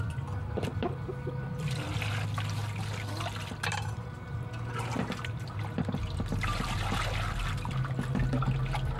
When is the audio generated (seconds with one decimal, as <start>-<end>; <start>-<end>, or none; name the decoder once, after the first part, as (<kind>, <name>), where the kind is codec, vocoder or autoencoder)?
none